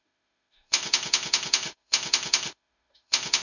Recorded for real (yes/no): no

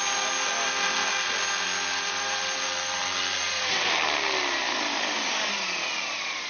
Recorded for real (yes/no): yes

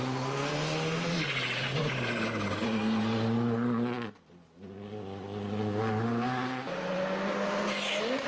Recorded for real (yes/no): yes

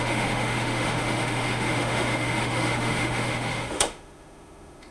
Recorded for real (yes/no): no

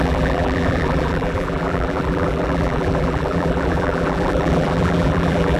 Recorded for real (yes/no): no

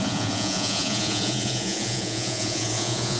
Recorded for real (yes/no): no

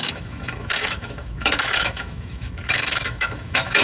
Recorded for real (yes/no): no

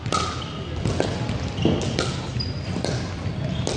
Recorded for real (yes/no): yes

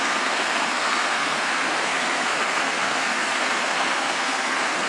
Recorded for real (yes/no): no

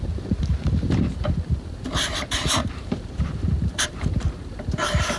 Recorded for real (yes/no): no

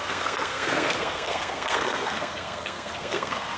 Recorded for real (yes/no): no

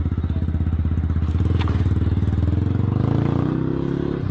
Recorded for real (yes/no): yes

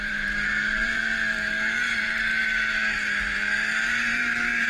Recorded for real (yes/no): no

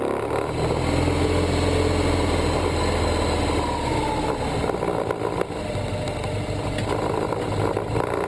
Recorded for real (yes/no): yes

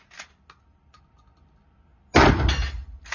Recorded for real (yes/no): yes